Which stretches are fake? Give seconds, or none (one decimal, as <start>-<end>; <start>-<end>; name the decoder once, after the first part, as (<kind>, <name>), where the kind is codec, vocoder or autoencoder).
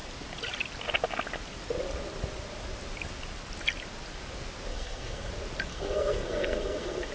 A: 4.7-5.3 (codec, SNAC); 5.7-7.1